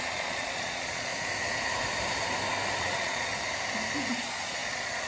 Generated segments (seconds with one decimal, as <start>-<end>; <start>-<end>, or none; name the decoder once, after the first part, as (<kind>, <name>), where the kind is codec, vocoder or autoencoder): 0.0-1.1 (vocoder, Vocos); 2.8-3.3; 4.1-5.1